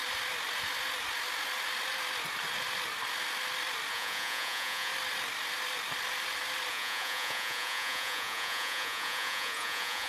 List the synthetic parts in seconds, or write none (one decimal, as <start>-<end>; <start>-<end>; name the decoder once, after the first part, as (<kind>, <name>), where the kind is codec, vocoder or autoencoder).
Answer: 3.9-4.9 (vocoder, Vocos); 6.7-10.1